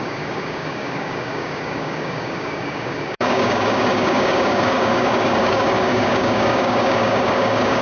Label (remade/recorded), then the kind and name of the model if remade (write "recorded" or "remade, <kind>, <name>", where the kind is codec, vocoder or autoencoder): remade, codec, DAC